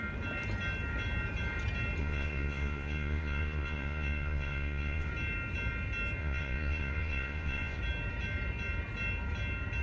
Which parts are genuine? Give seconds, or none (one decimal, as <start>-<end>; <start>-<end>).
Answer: 0.0-2.0; 5.1-6.2; 7.8-9.8